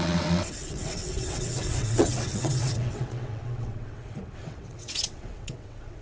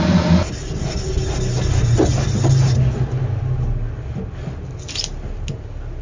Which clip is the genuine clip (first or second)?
second